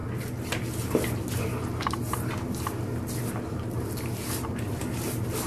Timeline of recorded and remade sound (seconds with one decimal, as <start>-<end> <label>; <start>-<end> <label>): 0.0-3.3 recorded; 3.3-5.5 remade